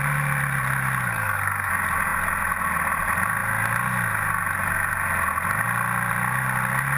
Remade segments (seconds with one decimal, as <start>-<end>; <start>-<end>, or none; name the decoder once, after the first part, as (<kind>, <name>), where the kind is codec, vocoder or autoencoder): 1.1-1.7 (codec, SNAC)